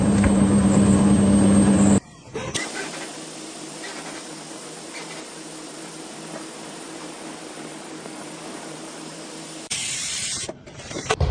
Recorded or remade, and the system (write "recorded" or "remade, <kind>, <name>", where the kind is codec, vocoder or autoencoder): remade, vocoder, BigVGAN v2